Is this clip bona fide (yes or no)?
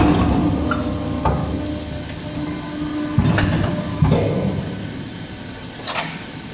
yes